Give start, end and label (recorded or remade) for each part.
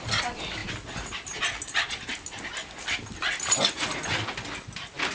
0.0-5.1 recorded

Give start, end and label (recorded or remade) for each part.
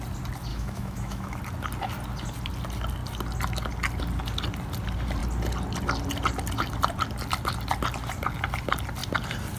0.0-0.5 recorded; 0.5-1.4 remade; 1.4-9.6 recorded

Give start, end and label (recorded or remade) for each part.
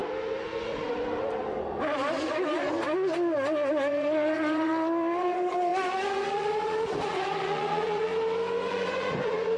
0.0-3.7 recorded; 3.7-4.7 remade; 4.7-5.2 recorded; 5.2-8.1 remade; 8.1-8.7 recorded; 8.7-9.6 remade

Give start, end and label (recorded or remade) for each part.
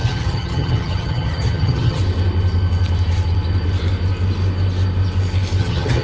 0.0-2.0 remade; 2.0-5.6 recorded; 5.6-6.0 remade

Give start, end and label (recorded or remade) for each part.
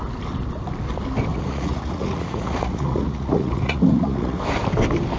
0.0-1.3 recorded; 1.3-4.4 remade; 4.4-5.2 recorded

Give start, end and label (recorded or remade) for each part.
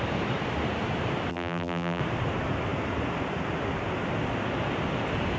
0.0-1.3 recorded; 1.3-2.0 remade; 2.0-5.4 recorded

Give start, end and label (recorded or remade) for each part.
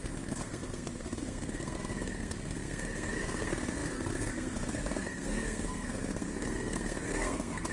0.0-7.7 remade